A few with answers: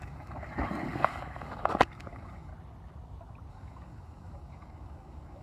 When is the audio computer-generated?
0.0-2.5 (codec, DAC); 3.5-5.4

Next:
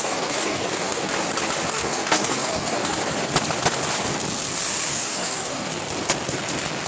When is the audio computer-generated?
0.0-1.1 (codec, DAC); 1.7-3.0; 4.9-5.7

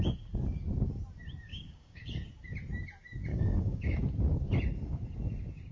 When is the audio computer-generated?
1.5-2.0 (codec, DAC); 3.3-4.0

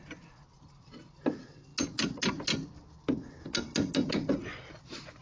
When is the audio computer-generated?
none

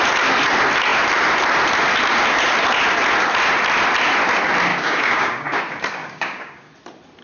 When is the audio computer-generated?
4.7-5.6 (codec, DAC); 6.0-6.7

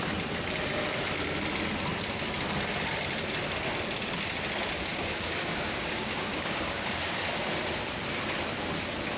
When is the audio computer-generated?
4.9-7.2 (codec, DAC)

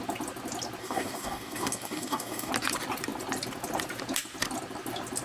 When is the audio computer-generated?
0.8-2.5 (codec, DAC)